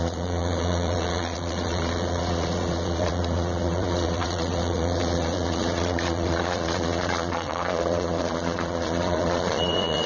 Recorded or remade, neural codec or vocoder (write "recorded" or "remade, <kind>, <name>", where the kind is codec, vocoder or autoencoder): remade, vocoder, Vocos